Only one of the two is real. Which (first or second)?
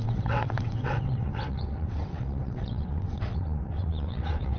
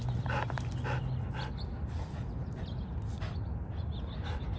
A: second